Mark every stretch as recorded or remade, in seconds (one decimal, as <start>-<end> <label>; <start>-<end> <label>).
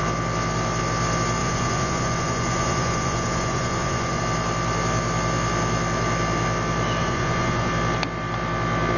0.0-1.4 recorded; 1.4-4.2 remade; 4.2-7.0 recorded; 7.0-7.7 remade; 7.7-9.0 recorded